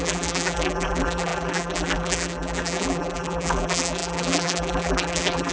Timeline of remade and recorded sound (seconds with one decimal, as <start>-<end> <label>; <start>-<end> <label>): 0.0-5.5 remade